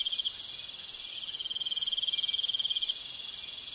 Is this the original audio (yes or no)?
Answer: yes